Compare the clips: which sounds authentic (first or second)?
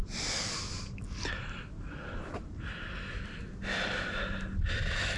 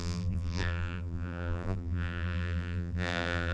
first